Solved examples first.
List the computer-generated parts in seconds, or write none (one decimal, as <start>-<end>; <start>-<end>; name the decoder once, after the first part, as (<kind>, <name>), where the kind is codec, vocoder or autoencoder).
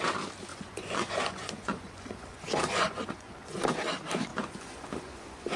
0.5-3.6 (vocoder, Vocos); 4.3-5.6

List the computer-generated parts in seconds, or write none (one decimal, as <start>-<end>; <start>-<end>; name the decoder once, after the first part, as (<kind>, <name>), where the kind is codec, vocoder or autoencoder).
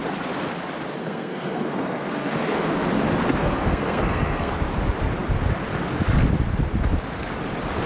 1.0-2.3 (codec, SNAC); 3.4-4.5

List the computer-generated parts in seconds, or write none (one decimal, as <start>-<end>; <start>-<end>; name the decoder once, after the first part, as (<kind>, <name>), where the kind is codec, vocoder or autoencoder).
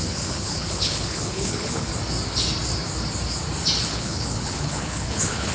0.0-1.9 (codec, HILCodec); 3.9-5.5